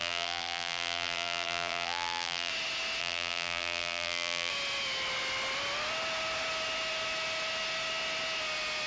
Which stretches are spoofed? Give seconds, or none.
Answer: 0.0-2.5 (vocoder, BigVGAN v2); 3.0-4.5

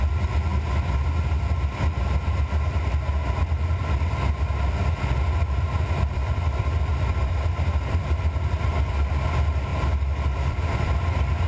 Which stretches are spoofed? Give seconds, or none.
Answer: 0.0-0.5 (vocoder, BigVGAN v2); 5.2-9.7; 10.5-11.5

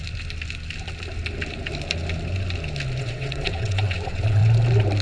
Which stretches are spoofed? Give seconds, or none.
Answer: 3.0-4.4 (vocoder, WaveNeXt)

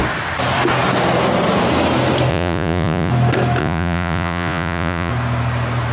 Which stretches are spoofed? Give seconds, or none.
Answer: 2.3-3.1 (vocoder, Vocos); 3.6-5.1

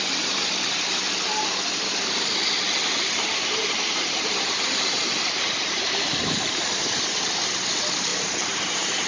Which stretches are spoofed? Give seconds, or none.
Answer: 3.3-6.6 (vocoder, BigVGAN v2); 8.1-9.1

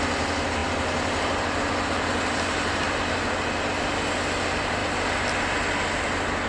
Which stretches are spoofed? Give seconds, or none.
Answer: none

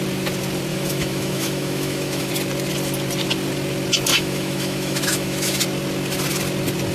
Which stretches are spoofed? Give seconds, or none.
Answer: 0.7-2.3 (autoencoder, DAC-VAE); 4.1-5.6

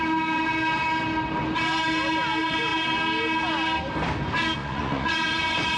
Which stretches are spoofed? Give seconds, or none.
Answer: 4.6-5.8 (vocoder, Vocos)